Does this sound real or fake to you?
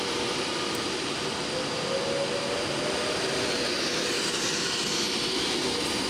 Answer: real